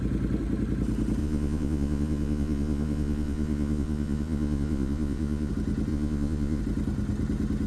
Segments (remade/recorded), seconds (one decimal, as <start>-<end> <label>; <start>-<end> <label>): 0.0-1.2 recorded; 1.2-5.5 remade; 5.5-5.9 recorded; 5.9-6.6 remade; 6.6-7.7 recorded